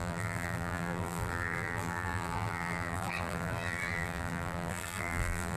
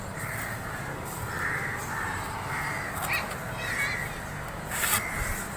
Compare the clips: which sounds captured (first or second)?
second